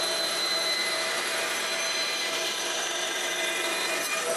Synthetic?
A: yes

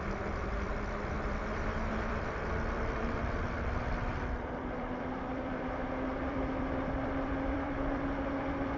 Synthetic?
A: yes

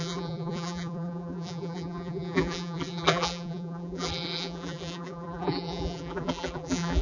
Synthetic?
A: yes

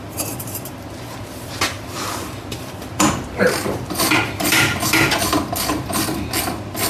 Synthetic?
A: yes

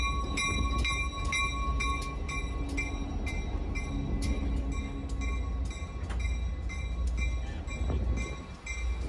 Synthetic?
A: no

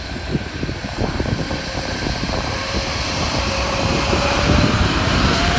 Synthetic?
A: yes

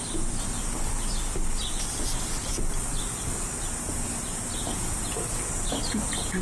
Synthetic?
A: no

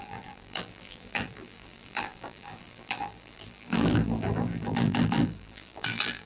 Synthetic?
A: yes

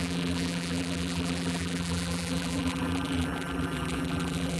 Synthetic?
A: yes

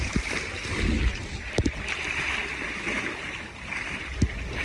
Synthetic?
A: yes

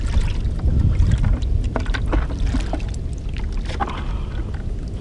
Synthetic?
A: no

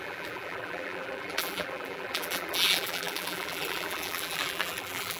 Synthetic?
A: yes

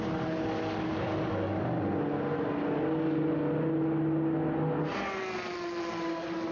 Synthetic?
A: no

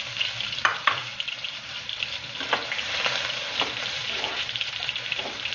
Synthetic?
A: yes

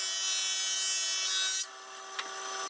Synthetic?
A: no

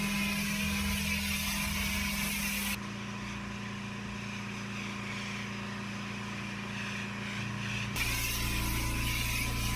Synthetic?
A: no